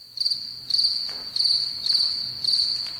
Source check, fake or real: real